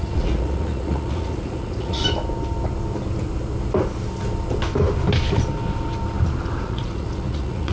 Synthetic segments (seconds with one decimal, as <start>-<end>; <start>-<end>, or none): 0.0-2.0; 6.6-7.7